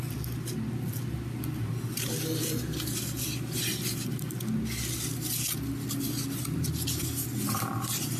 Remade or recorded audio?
recorded